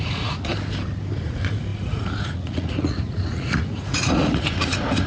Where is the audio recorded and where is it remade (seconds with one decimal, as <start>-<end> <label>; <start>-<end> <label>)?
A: 0.0-0.5 remade; 0.5-1.2 recorded; 1.2-5.1 remade